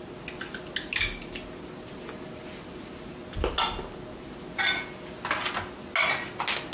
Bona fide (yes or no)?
yes